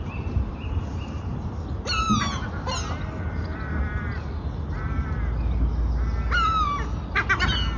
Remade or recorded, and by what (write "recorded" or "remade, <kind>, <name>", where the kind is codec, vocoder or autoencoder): recorded